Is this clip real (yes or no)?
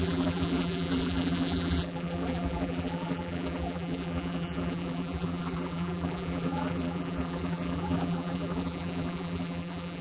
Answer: no